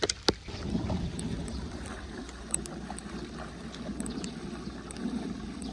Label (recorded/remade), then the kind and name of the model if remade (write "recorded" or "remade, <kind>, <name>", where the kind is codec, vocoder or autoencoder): recorded